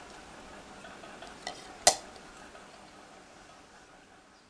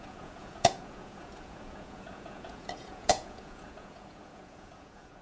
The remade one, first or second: second